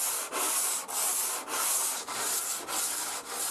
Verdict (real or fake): real